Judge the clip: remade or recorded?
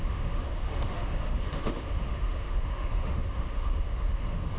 remade